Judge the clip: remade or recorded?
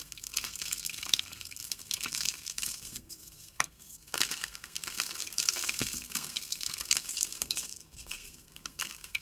remade